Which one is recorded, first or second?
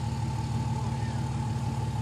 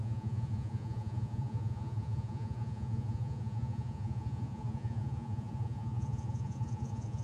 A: first